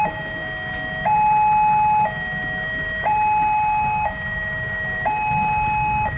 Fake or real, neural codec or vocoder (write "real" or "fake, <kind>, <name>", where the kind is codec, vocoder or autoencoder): real